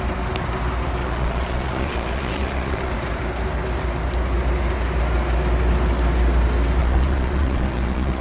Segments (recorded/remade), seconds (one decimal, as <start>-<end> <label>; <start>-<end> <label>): 0.0-1.0 recorded; 1.0-2.9 remade; 2.9-6.8 recorded; 6.8-8.2 remade